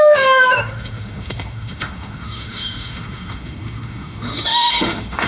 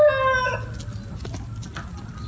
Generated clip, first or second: first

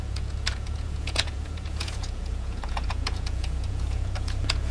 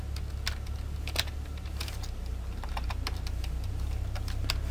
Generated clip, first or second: first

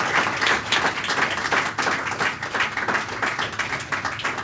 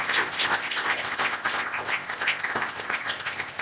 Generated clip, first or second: second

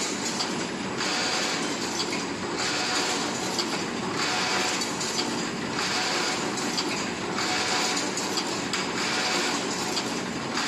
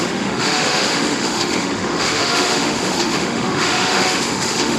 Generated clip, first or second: second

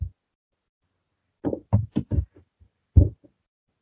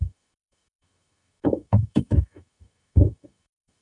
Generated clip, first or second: second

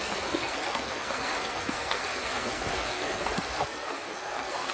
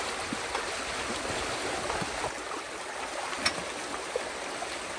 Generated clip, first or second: first